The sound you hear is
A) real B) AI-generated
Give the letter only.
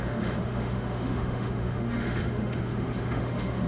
B